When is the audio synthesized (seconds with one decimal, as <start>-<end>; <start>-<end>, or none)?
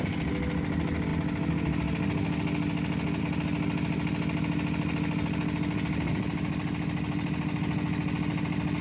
none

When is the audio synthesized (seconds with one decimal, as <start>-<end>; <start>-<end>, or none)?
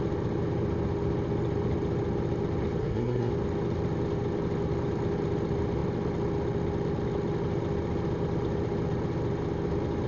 2.8-3.3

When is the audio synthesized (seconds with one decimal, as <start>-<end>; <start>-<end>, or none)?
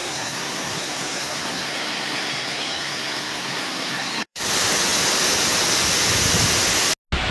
0.0-4.4